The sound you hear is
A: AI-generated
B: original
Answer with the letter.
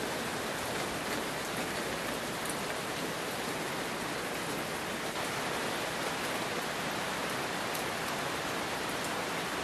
A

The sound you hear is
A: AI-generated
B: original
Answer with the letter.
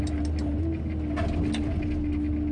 B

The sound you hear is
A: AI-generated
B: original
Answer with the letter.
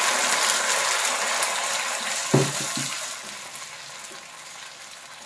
B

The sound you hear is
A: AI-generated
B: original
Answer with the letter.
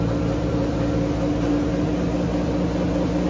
B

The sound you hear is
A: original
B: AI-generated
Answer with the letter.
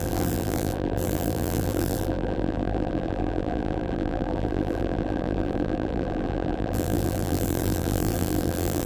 B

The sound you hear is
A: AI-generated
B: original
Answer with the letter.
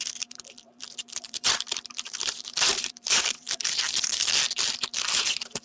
A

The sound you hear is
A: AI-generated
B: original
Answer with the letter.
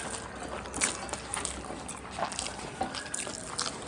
B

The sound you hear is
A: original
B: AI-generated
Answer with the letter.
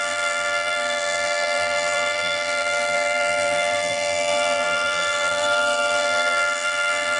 B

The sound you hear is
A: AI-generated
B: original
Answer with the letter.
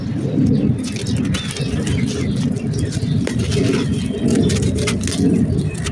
B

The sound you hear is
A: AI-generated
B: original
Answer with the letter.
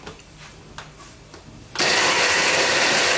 B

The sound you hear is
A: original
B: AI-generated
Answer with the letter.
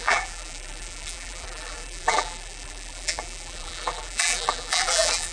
B